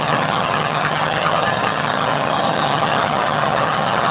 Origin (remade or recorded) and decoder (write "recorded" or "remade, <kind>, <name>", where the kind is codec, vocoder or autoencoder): remade, vocoder, HiFi-GAN